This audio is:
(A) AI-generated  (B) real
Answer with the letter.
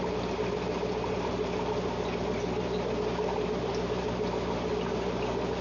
B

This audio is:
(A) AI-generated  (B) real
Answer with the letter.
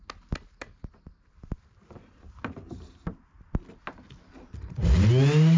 B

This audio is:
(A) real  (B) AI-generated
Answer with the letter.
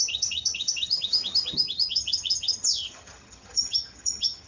B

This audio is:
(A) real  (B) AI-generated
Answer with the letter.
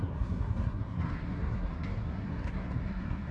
B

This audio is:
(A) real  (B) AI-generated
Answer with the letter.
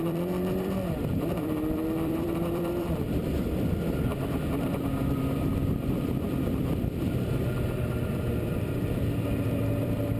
B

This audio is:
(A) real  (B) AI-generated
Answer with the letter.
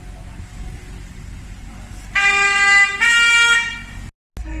A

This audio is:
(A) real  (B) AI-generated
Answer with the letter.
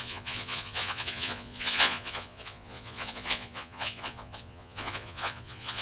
B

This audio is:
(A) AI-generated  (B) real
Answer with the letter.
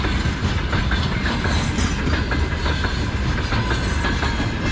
B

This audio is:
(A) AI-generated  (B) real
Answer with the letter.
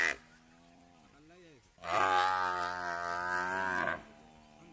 B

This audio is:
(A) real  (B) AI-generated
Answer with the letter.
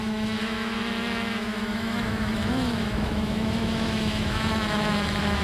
B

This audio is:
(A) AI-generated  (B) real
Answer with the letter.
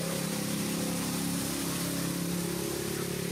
B